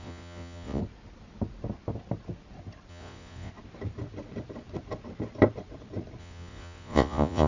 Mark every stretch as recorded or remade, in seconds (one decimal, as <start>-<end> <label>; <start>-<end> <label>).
0.0-0.8 remade; 0.8-2.9 recorded; 2.9-3.5 remade; 3.5-6.2 recorded; 6.2-7.5 remade